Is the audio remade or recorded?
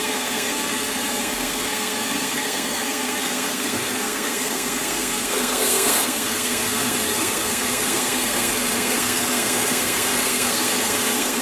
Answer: remade